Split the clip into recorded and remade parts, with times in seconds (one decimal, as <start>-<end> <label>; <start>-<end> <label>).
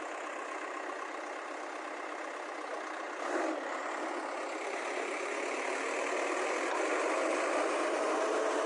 0.0-8.7 recorded